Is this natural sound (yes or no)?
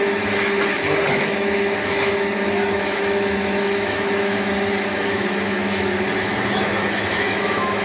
no